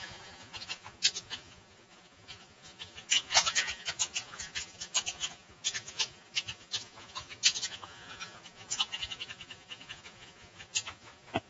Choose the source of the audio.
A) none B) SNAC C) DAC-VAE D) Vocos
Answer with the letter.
D